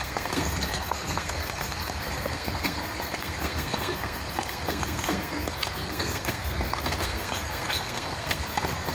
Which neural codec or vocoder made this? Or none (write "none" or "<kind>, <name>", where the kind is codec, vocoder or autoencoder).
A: codec, SNAC